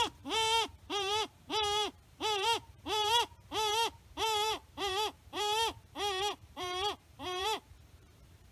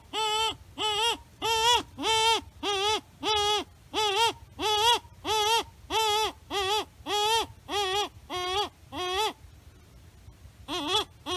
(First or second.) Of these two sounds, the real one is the second